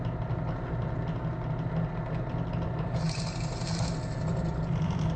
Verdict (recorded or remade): recorded